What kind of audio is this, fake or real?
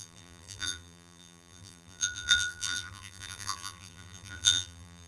fake